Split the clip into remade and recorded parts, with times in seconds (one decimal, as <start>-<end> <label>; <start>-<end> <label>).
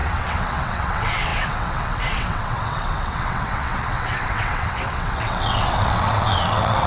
0.0-6.9 remade